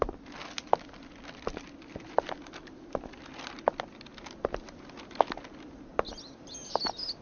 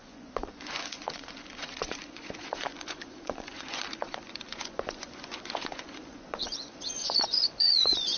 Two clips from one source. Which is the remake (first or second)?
second